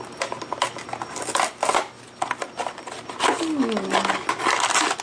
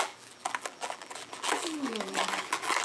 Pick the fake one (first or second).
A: second